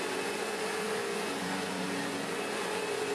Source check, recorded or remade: remade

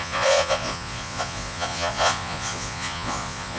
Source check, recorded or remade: remade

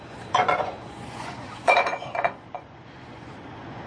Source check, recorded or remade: remade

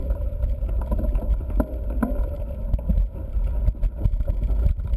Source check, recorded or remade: recorded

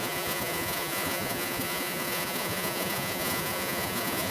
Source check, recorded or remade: remade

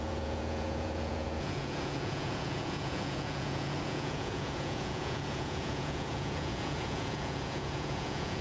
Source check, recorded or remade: remade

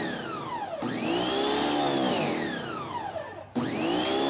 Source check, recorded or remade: recorded